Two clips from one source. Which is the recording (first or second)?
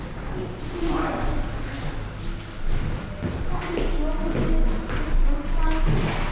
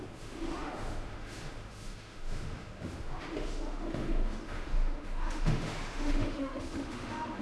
first